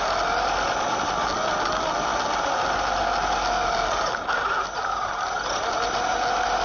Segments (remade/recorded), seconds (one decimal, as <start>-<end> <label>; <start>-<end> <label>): 0.0-6.6 recorded